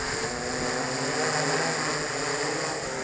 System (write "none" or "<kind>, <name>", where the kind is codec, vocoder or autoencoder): none